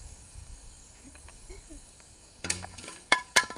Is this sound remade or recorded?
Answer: remade